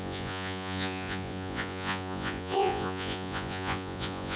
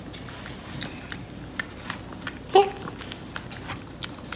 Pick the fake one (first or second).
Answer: first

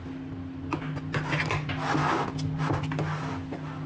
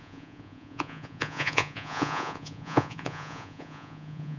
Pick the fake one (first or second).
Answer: second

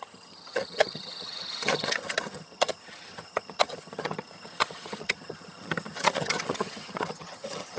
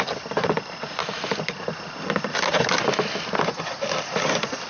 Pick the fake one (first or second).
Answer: first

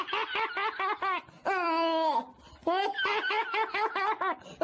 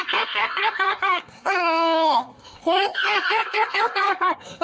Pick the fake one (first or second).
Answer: second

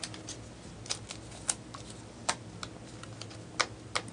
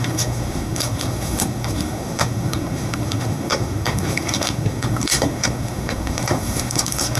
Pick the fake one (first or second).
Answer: second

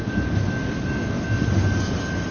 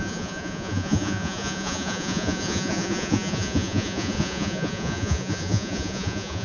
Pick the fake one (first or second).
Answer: second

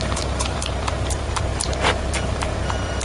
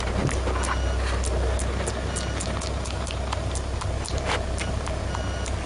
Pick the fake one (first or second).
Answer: first